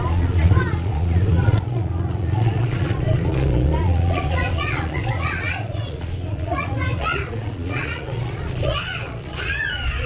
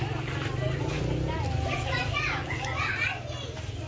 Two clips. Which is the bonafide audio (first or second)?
second